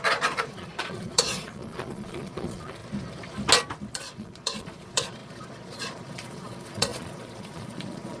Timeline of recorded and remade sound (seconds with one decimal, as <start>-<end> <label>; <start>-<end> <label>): 0.0-2.8 remade; 2.8-3.9 recorded; 3.9-8.2 remade